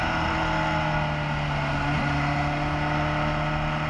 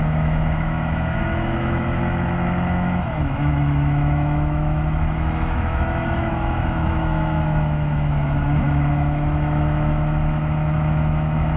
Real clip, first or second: first